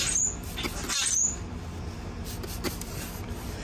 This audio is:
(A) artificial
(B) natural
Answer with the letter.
A